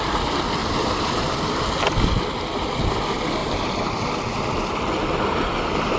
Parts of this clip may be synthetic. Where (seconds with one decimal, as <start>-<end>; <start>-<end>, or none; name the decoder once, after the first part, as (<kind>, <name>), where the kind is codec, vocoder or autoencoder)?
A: 0.6-1.4 (vocoder, BigVGAN v2); 3.4-6.0